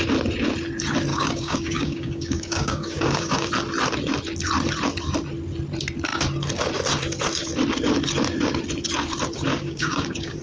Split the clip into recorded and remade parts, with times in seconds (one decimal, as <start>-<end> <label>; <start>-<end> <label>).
0.0-1.1 recorded; 1.1-3.5 remade; 3.5-9.5 recorded; 9.5-10.4 remade

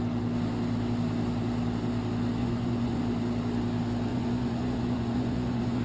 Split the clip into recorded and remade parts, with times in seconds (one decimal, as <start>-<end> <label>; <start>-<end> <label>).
0.0-2.4 recorded; 2.4-3.0 remade; 3.0-4.1 recorded; 4.1-5.8 remade

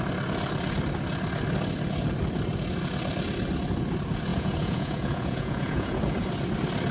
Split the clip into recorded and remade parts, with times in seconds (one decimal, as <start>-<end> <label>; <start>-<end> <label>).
0.0-4.3 recorded; 4.3-6.0 remade; 6.0-6.9 recorded

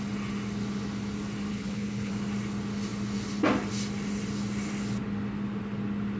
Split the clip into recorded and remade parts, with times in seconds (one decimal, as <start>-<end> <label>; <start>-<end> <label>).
0.0-1.5 recorded; 1.5-2.1 remade; 2.1-6.2 recorded